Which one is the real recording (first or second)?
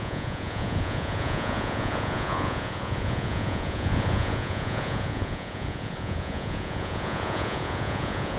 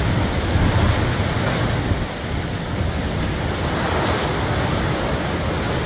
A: second